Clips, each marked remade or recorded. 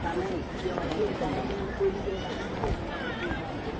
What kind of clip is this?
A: remade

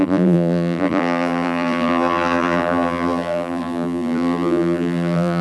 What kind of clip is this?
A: remade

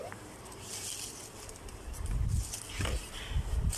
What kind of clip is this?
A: recorded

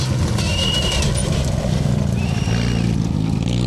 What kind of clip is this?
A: recorded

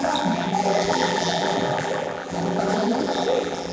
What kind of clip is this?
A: remade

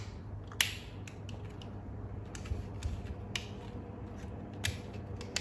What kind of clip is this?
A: recorded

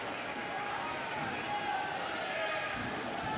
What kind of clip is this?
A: recorded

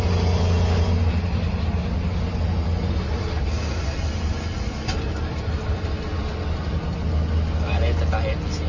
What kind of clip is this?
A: recorded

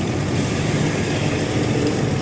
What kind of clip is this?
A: remade